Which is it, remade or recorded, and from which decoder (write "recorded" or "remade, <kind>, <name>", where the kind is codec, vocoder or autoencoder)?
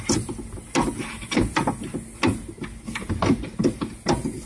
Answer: recorded